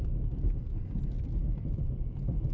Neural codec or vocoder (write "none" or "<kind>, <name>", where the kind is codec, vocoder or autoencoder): none